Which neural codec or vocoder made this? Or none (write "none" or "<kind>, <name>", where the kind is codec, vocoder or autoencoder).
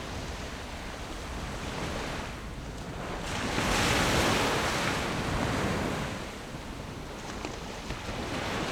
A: none